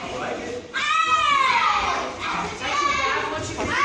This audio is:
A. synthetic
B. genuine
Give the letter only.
B